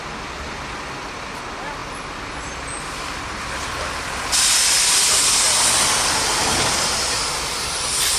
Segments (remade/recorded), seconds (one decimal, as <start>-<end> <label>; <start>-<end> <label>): 0.0-8.2 recorded